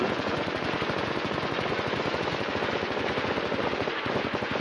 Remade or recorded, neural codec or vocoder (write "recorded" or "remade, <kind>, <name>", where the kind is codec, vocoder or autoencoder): remade, vocoder, Vocos